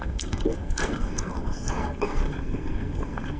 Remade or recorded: remade